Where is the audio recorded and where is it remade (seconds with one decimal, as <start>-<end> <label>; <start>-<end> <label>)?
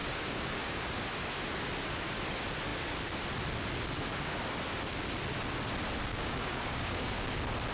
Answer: 0.0-1.0 remade; 1.0-6.1 recorded; 6.1-7.3 remade; 7.3-7.7 recorded